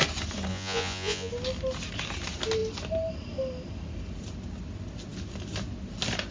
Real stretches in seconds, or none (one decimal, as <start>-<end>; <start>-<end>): 0.0-0.5; 1.3-6.3

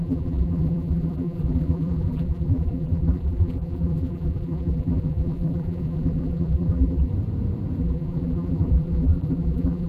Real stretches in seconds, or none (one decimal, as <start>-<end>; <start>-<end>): 7.1-7.8

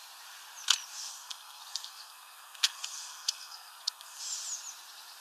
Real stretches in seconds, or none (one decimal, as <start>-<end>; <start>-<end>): 0.0-1.1; 4.2-5.2

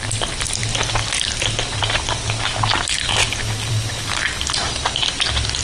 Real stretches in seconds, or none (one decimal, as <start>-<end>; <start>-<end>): 0.0-5.6

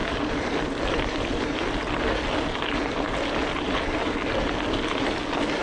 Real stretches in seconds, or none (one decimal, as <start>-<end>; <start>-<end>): 0.0-5.6